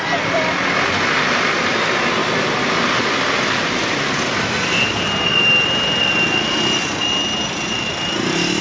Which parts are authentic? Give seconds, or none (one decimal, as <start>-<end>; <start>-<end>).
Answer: 0.0-8.6